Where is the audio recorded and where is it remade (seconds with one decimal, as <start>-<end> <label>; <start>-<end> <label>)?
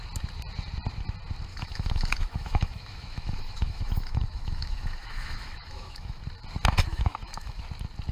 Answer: 0.0-1.5 recorded; 1.5-6.2 remade; 6.2-6.9 recorded; 6.9-7.6 remade; 7.6-8.1 recorded